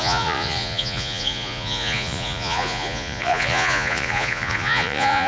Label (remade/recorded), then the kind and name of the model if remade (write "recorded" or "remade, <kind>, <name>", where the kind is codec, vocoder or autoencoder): remade, vocoder, Vocos